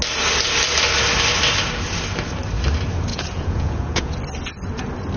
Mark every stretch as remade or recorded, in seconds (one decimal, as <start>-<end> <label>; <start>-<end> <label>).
0.0-3.1 recorded; 3.1-4.1 remade; 4.1-5.2 recorded